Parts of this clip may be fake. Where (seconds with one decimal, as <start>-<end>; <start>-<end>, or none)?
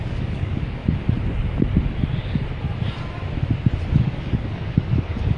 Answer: 0.0-0.8; 4.0-5.4